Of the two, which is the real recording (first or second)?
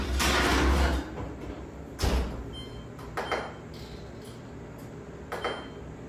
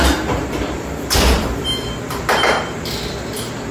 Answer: first